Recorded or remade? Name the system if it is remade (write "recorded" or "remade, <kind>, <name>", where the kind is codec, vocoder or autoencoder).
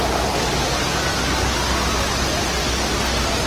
recorded